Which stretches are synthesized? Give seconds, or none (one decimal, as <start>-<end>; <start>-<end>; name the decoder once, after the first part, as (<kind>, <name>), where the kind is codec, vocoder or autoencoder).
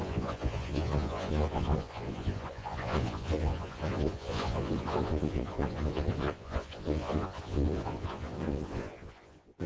0.0-9.7 (vocoder, Vocos)